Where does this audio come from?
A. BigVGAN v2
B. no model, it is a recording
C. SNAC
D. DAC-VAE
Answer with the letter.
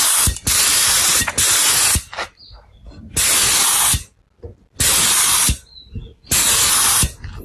B